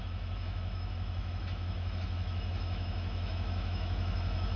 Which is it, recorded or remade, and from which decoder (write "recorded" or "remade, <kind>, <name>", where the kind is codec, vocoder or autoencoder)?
remade, autoencoder, DAC-VAE